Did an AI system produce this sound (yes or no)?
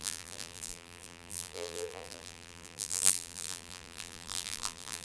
yes